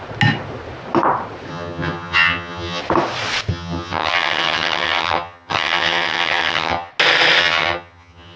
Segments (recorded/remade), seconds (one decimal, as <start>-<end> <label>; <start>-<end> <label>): 0.0-1.5 recorded; 1.5-2.8 remade; 2.8-3.5 recorded; 3.5-6.9 remade; 6.9-7.4 recorded; 7.4-8.4 remade